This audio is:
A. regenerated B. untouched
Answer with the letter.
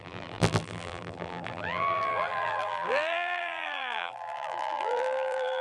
A